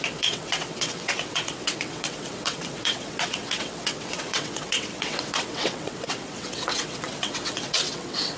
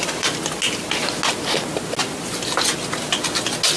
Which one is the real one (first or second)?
second